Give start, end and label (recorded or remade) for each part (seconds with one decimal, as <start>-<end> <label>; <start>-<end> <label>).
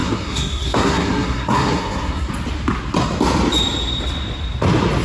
0.0-2.3 remade; 2.3-5.0 recorded